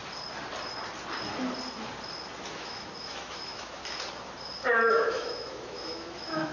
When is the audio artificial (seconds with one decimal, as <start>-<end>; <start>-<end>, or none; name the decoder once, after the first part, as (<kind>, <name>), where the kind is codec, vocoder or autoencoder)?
2.5-3.8 (autoencoder, DAC-VAE); 4.9-6.5